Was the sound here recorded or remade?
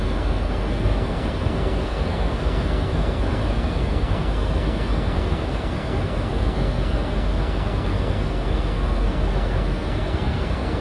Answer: remade